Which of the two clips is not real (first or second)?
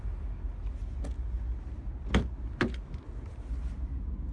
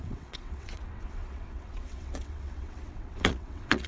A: second